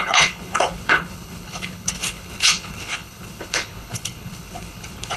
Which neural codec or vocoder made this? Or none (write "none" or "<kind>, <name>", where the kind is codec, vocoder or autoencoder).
codec, HILCodec